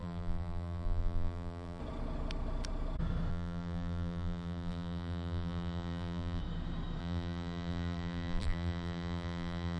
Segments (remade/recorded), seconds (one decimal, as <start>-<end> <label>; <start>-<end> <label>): 0.0-1.8 remade; 1.8-3.3 recorded; 3.3-6.4 remade; 6.4-7.0 recorded; 7.0-9.8 remade